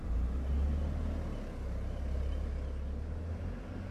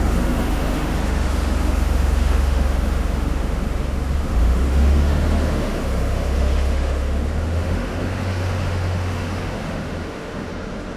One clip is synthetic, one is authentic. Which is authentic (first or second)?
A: first